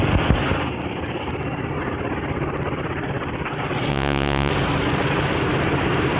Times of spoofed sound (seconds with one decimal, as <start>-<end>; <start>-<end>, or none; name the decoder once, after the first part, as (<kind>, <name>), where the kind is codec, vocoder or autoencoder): 3.9-4.5 (vocoder, Vocos)